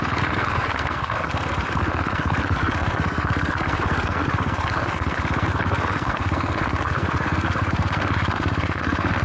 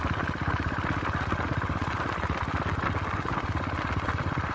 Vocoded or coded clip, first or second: first